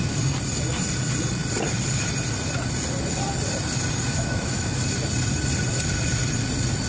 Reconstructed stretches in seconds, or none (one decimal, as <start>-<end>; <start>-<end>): 4.1-4.8